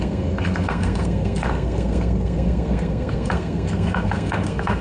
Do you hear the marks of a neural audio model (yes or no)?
yes